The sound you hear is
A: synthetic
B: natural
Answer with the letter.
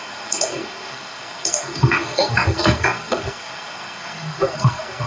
A